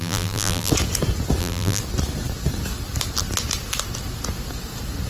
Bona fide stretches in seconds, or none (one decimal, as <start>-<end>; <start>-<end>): 0.7-1.4; 1.8-5.1